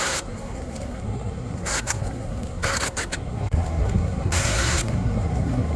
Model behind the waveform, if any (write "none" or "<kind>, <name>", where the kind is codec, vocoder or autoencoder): codec, SNAC